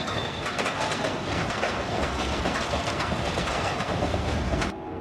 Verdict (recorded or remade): remade